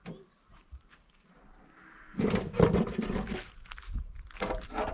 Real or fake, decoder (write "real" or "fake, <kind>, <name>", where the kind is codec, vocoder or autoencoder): real